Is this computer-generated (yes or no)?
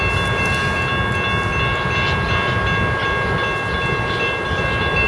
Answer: no